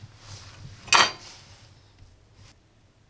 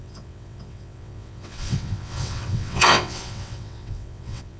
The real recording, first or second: first